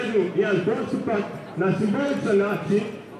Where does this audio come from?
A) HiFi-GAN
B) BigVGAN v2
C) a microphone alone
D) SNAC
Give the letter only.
C